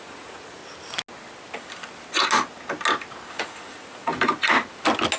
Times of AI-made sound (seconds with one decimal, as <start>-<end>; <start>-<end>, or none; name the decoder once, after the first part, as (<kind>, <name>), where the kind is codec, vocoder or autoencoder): 0.0-0.6 (vocoder, Vocos); 3.3-4.1